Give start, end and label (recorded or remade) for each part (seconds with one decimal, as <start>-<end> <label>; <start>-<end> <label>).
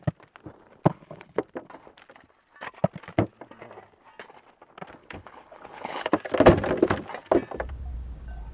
0.0-0.9 recorded; 0.9-1.4 remade; 1.4-5.0 recorded; 5.0-6.1 remade; 6.1-8.5 recorded